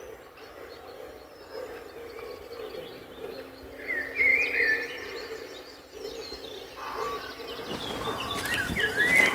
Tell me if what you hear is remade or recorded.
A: recorded